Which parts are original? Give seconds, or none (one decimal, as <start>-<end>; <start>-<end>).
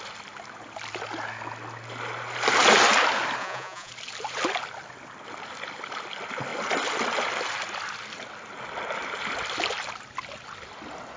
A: 0.0-3.4; 3.9-11.2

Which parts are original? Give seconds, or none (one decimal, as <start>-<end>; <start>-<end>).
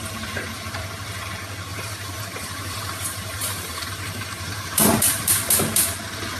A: 0.0-1.7; 5.5-6.4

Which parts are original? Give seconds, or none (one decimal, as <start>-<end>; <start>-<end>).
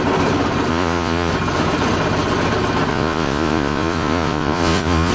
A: 0.0-0.7; 1.3-2.9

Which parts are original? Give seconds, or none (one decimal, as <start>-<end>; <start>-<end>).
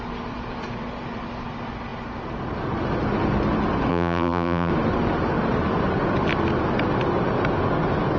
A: 0.0-3.9; 4.7-8.2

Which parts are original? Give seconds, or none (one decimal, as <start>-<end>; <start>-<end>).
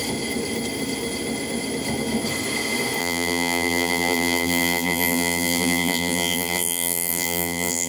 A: 0.0-3.0